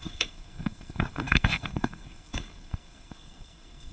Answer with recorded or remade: remade